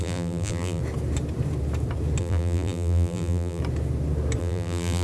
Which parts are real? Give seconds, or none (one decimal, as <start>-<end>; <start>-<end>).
0.8-2.2; 3.6-4.4